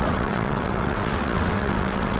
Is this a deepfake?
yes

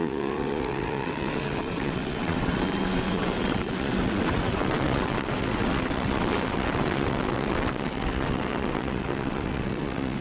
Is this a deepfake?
yes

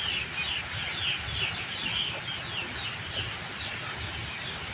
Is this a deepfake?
no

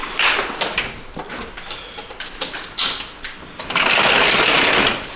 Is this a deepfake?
no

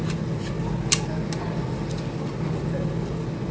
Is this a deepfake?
no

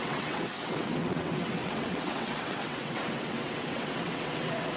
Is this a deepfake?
yes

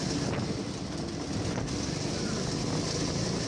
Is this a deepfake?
no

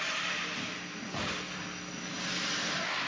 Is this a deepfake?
no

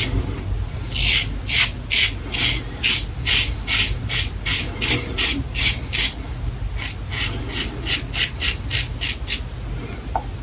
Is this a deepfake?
no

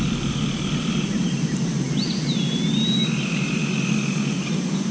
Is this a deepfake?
no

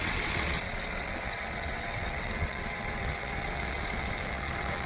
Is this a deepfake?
yes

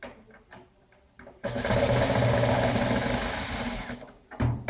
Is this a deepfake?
no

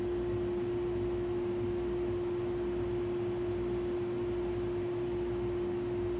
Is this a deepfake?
no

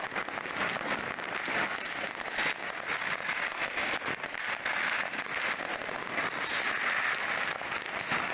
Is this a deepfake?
no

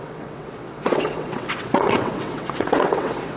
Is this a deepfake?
yes